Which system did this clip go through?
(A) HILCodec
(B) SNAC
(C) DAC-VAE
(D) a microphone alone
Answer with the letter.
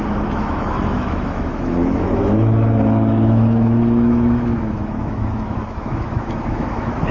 C